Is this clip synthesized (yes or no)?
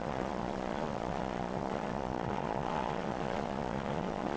yes